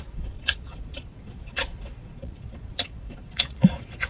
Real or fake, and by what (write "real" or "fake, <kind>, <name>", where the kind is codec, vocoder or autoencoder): fake, vocoder, Vocos